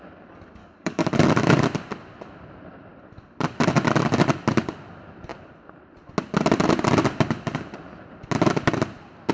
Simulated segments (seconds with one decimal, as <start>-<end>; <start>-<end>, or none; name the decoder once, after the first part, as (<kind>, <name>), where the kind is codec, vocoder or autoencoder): 0.6-1.1 (codec, DAC)